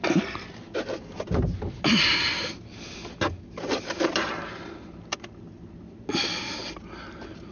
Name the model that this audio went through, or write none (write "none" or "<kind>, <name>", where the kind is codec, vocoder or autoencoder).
none